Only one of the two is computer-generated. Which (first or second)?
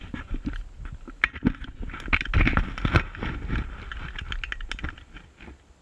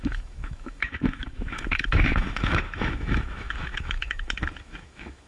second